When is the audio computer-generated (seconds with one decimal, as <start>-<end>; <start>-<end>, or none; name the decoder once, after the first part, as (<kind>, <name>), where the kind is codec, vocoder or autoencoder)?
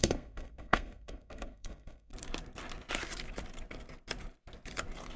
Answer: 0.0-2.1 (codec, SNAC)